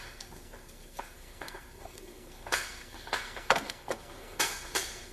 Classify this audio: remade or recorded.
remade